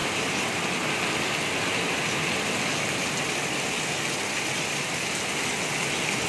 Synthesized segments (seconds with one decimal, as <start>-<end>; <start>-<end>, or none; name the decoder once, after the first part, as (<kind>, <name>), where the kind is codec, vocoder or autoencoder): none